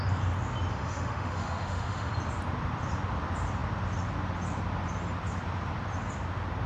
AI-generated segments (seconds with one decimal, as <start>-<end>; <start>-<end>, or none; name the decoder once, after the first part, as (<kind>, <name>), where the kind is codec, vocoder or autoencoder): 0.7-2.1 (autoencoder, DAC-VAE)